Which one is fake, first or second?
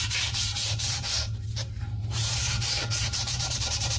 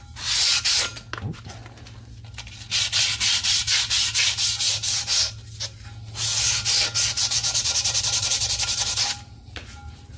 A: first